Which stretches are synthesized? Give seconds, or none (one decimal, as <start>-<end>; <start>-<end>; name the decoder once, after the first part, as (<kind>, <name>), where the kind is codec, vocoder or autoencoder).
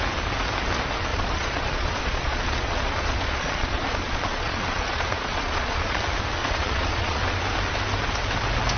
1.1-6.0 (vocoder, Vocos); 6.4-7.2